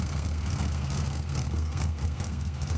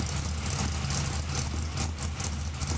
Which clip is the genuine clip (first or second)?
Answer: second